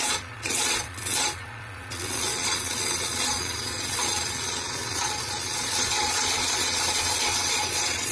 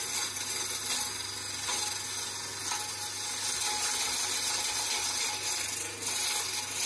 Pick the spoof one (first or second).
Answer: first